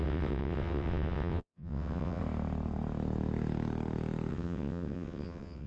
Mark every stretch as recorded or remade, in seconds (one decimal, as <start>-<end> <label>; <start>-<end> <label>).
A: 0.0-2.2 remade; 2.2-4.3 recorded; 4.3-5.7 remade